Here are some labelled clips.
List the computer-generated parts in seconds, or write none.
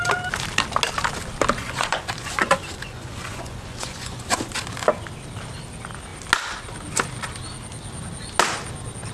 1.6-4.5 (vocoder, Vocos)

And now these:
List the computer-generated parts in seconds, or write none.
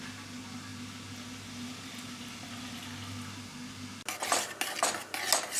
none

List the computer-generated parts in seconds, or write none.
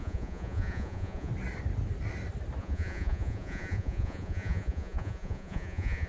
0.0-1.3 (vocoder, Vocos); 2.6-6.1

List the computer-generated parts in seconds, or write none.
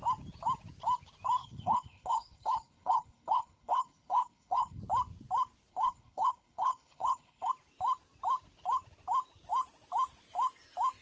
1.4-4.8 (codec, HILCodec); 5.7-7.5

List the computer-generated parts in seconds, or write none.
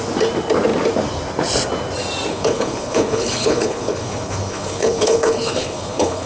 2.3-6.3 (codec, HILCodec)